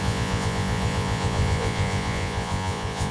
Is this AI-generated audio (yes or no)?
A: yes